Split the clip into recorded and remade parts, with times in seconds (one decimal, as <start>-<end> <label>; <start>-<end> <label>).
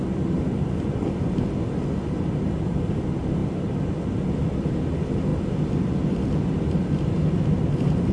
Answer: 0.0-8.1 recorded